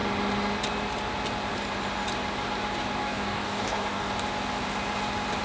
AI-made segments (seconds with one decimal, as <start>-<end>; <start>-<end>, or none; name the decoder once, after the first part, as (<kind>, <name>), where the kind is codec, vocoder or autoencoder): 3.0-4.1 (codec, DAC)